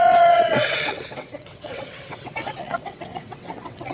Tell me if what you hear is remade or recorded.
remade